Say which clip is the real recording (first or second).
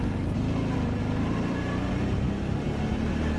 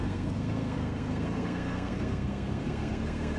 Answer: first